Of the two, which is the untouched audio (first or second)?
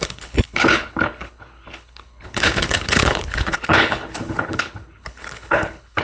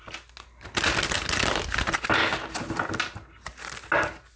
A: second